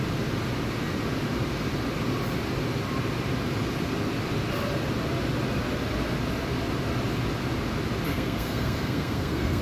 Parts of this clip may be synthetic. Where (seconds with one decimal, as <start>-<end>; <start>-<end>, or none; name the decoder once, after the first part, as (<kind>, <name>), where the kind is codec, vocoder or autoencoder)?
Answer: 8.1-9.6 (codec, SNAC)